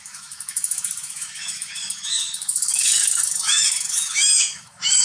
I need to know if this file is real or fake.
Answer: fake